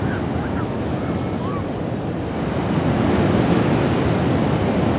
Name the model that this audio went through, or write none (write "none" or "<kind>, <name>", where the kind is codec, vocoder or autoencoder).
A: none